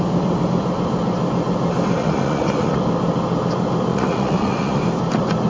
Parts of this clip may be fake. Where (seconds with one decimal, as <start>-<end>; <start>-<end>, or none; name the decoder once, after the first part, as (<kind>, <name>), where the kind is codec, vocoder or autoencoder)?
2.0-2.8 (vocoder, Vocos); 3.9-4.8